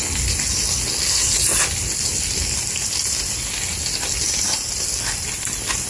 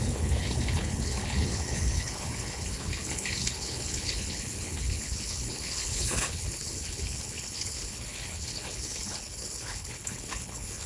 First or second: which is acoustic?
first